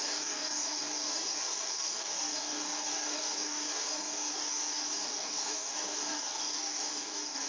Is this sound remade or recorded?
remade